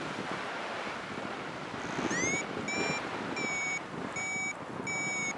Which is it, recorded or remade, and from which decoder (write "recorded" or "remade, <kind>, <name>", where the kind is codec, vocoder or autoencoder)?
recorded